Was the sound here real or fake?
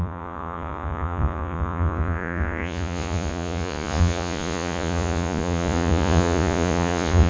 fake